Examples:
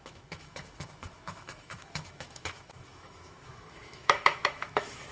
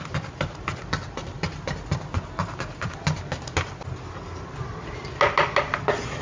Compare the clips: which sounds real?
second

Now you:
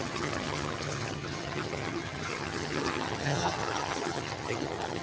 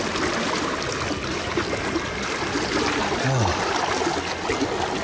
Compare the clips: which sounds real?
second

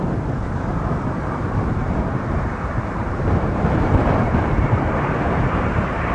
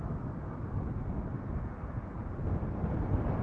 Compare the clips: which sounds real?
second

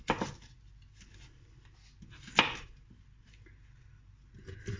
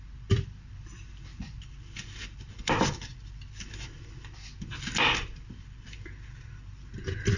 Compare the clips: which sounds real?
first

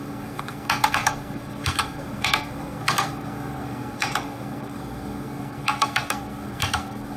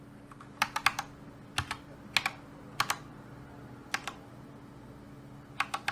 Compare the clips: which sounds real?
second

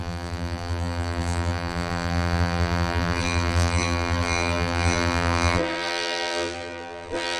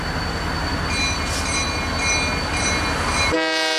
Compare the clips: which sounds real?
second